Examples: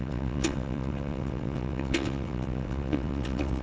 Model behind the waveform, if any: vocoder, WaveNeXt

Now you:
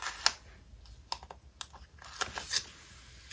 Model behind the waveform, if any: none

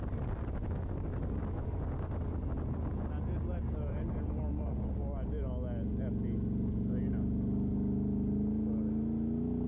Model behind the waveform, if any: none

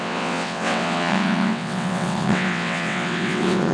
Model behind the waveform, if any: vocoder, WaveNeXt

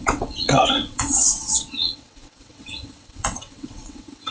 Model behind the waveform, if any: vocoder, WaveNeXt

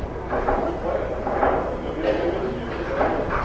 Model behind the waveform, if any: none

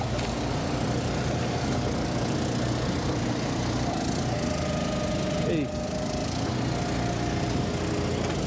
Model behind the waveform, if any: none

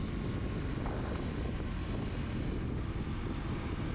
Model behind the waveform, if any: none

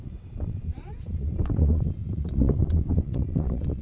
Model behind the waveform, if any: vocoder, WaveNeXt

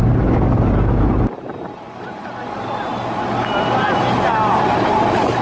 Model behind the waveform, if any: none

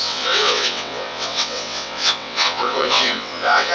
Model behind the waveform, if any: vocoder, WaveNeXt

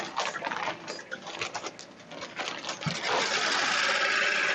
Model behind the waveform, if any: none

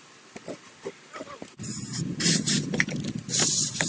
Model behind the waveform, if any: none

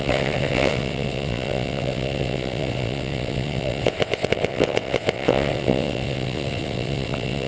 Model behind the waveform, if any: vocoder, WaveNeXt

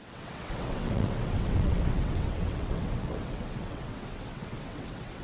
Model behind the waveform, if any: vocoder, WaveNeXt